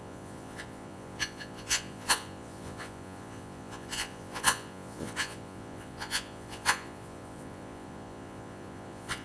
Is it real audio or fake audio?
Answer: fake